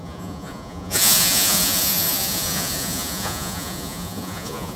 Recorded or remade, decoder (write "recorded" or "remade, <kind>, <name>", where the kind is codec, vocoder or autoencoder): remade, vocoder, Vocos